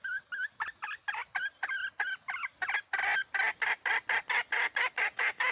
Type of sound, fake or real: real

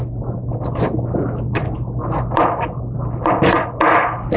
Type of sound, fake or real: real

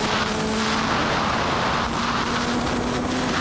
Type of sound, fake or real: real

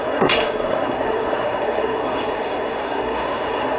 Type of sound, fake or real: fake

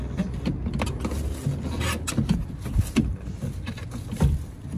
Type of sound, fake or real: real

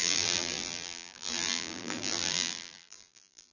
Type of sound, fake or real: fake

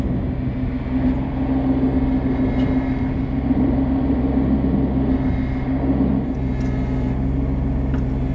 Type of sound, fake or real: real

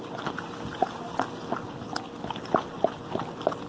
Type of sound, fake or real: real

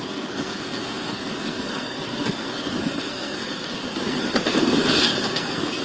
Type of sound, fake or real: fake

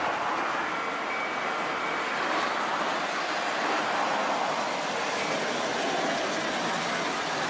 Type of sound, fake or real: real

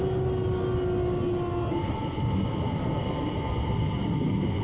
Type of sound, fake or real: real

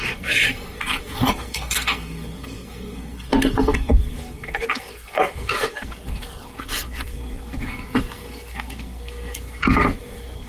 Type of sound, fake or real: fake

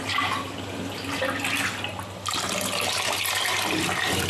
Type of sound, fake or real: real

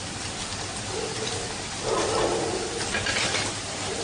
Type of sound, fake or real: real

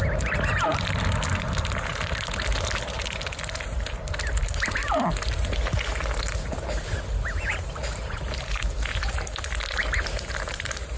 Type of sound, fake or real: real